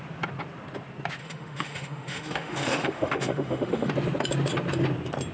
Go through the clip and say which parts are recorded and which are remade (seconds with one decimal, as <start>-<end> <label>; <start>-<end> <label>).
0.0-1.2 recorded; 1.2-3.9 remade; 3.9-5.3 recorded